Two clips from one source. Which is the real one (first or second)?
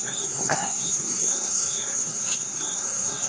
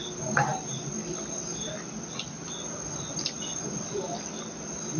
second